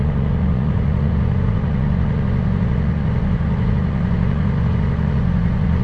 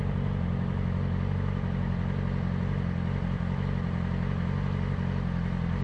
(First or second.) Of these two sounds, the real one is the second